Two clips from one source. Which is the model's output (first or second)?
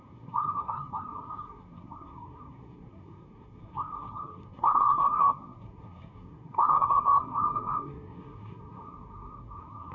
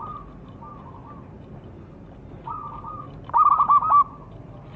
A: first